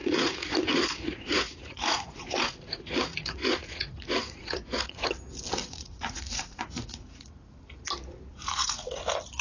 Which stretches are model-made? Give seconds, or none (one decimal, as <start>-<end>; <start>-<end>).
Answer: 0.0-5.1; 5.6-7.3; 8.3-9.0